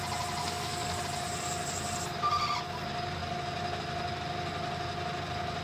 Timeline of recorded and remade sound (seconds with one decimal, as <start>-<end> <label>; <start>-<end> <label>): 0.0-0.4 recorded; 0.4-1.0 remade; 1.0-5.6 recorded